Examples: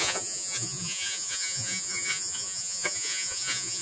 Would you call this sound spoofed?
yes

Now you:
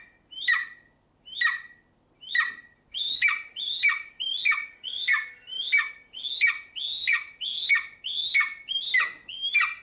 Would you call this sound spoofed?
no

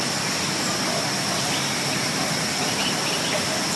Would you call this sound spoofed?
no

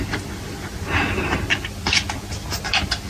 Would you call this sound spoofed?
no